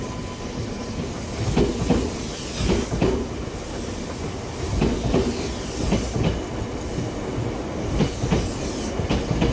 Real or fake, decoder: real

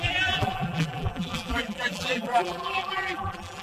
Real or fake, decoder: fake, vocoder, BigVGAN v2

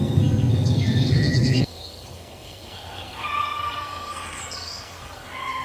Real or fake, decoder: fake, codec, SNAC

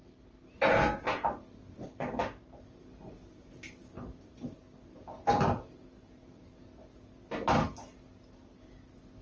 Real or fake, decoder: real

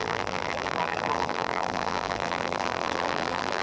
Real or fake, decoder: fake, vocoder, BigVGAN v2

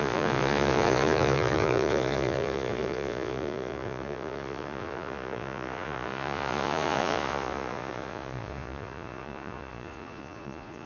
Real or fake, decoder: fake, vocoder, Vocos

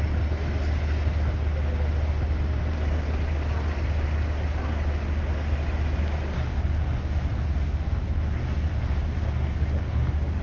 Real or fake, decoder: real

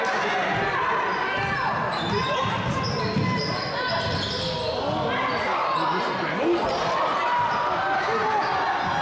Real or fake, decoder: real